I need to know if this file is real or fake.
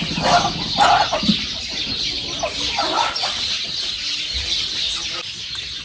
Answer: real